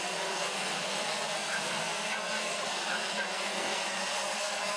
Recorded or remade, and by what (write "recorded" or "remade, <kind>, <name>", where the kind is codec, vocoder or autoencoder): remade, codec, SNAC